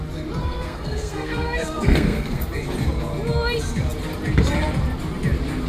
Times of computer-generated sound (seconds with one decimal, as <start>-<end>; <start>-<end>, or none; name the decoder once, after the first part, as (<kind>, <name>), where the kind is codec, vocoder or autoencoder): 0.4-2.4 (codec, SNAC)